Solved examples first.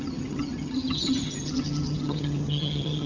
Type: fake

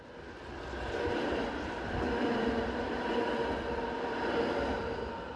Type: real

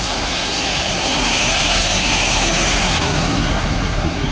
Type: fake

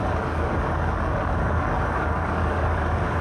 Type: fake